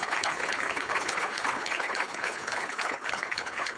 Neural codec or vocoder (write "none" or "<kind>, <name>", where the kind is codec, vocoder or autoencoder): codec, HILCodec